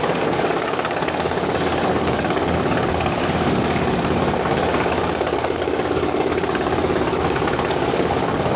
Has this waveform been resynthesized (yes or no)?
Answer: yes